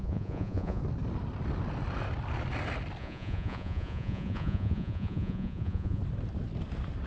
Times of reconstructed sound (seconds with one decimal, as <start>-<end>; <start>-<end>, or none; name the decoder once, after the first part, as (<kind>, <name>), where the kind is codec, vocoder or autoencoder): 0.0-0.8 (vocoder, Vocos); 3.0-6.0